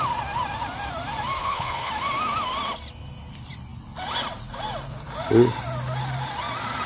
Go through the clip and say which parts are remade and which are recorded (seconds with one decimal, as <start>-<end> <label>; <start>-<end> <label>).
0.0-1.4 recorded; 1.4-1.9 remade; 1.9-6.9 recorded